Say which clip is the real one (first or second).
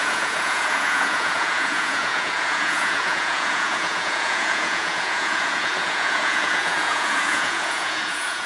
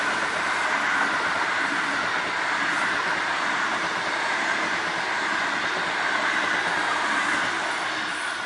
second